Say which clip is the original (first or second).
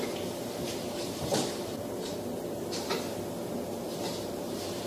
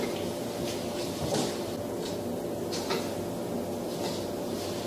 second